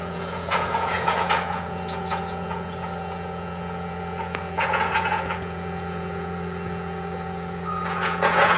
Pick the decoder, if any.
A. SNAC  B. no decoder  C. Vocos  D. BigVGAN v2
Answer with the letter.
C